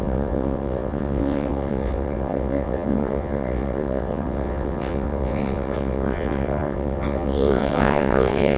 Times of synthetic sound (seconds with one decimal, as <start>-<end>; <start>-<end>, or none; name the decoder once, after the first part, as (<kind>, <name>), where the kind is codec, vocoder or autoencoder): 0.0-8.6 (vocoder, WaveNeXt)

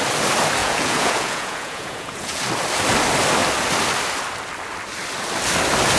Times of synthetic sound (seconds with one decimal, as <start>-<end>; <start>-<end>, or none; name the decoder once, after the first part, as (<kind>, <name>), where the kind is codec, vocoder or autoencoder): 0.6-2.4 (vocoder, Vocos)

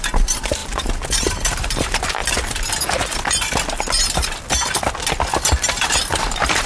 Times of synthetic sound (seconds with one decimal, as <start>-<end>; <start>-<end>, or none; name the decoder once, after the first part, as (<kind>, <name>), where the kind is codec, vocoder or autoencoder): 0.0-2.2 (vocoder, BigVGAN v2); 6.2-6.7

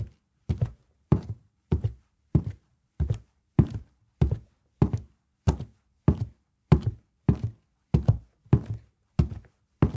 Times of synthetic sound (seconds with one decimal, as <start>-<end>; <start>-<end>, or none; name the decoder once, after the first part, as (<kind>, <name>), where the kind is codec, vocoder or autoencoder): 0.8-4.0 (vocoder, BigVGAN v2)

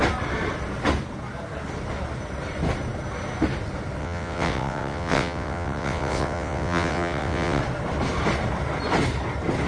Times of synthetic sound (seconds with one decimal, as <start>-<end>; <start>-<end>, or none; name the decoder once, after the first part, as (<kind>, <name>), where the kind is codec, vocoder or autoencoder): 4.0-7.6 (vocoder, WaveNeXt)